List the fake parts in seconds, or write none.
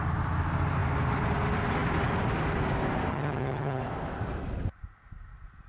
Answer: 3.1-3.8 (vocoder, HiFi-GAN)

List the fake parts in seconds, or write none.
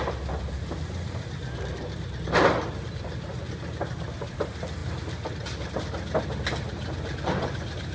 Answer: none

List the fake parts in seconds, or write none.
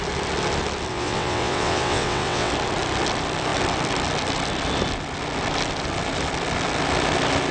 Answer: 0.9-2.5 (vocoder, WaveNeXt)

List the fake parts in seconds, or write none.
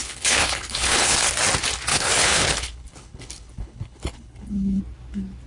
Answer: 0.0-1.3 (codec, HILCodec); 1.9-4.8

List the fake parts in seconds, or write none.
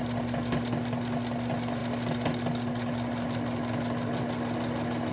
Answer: none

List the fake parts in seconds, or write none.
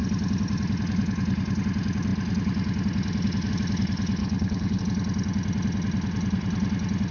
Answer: 4.2-4.8 (codec, HILCodec)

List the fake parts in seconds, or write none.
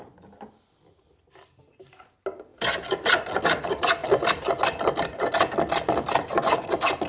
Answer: none